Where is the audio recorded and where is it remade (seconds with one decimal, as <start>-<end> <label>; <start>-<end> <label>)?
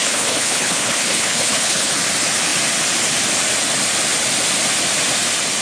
0.0-1.9 remade; 1.9-5.6 recorded